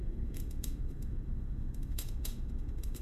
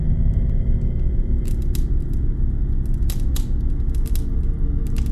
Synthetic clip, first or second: first